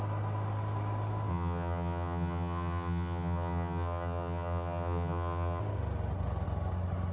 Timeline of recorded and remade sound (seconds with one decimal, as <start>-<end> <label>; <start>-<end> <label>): 0.0-1.3 recorded; 1.3-5.6 remade; 5.6-7.1 recorded